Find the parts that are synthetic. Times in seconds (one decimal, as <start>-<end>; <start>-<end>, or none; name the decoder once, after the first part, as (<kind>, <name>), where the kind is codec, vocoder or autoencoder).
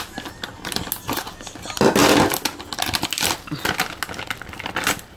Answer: none